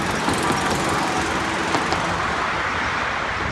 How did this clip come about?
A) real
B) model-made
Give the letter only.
A